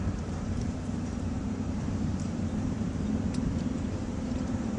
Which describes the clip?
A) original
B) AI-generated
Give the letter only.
B